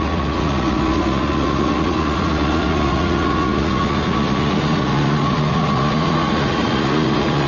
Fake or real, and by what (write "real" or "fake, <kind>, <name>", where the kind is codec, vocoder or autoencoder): fake, vocoder, Vocos